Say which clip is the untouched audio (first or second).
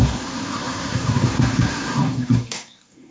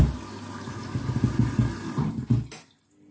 second